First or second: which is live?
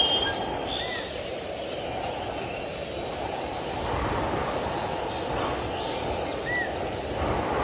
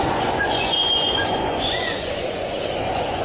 first